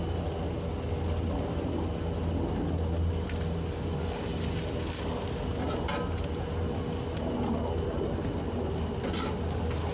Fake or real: real